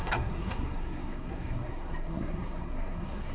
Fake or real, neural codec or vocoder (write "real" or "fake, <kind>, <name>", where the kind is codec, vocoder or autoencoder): fake, codec, SNAC